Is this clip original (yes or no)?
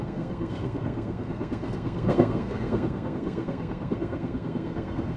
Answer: no